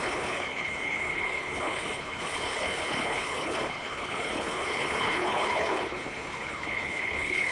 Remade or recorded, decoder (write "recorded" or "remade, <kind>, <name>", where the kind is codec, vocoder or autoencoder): remade, codec, HILCodec